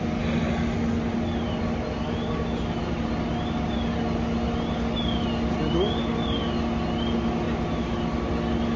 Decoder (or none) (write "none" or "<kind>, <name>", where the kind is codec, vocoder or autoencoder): none